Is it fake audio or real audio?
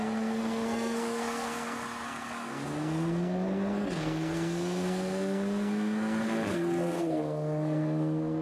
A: fake